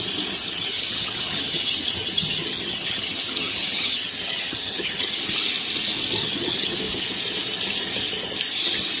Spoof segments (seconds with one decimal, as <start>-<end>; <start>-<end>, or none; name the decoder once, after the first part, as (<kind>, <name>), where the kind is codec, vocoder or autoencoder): 0.4-5.2 (vocoder, HiFi-GAN); 6.2-6.8